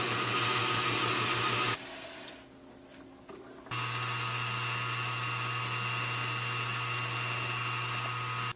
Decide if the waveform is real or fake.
real